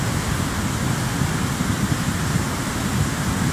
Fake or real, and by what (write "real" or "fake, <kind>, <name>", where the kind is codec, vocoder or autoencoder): real